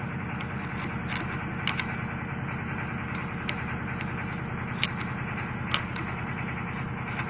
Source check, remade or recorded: recorded